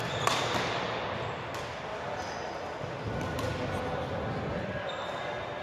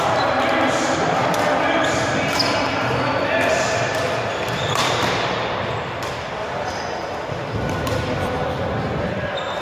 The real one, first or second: first